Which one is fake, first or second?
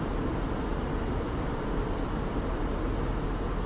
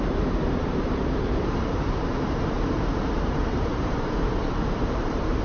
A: second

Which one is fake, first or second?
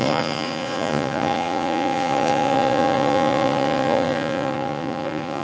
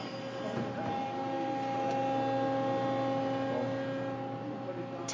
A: first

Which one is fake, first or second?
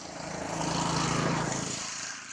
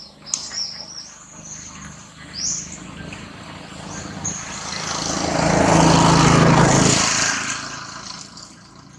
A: first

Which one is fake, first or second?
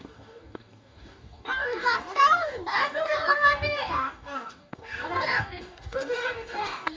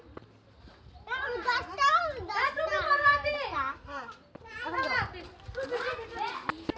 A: first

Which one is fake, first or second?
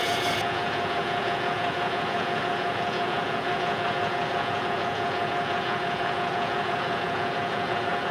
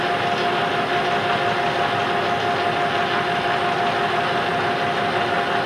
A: first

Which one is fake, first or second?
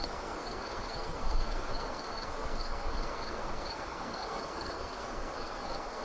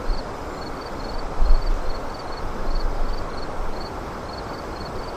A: first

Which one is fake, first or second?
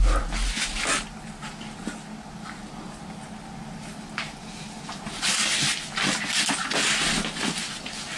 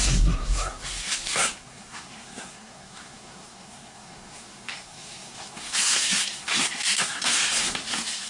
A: second